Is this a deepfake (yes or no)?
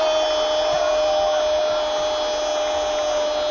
no